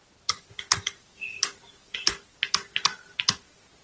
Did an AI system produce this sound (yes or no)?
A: no